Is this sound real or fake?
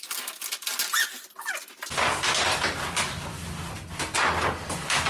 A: real